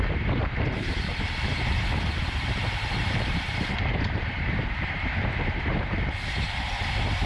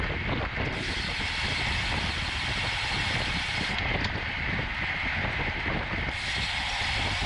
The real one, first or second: second